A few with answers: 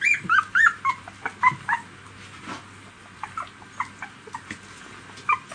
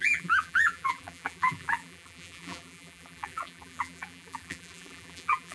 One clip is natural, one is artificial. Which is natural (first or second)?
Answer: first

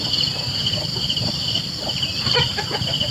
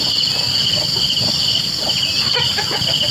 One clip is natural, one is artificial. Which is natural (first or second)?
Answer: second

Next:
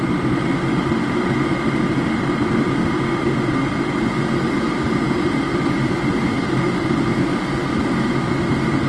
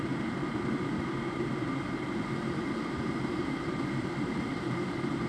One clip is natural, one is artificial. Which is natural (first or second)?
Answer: first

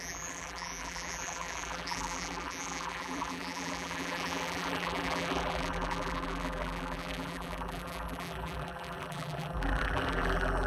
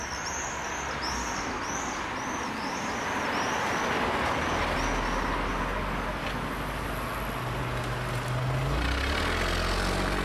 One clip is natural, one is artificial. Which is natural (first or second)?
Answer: second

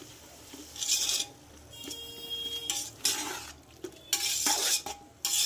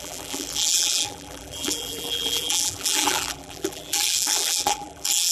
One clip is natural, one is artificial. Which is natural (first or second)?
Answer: first